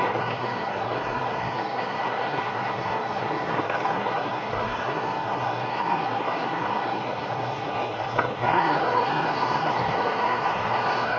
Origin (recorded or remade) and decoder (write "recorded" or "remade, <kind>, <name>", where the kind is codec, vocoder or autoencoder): remade, codec, SNAC